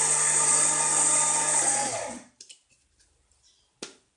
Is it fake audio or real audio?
real